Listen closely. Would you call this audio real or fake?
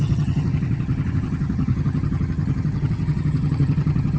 fake